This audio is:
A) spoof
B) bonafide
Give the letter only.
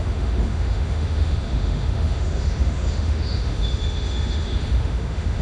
A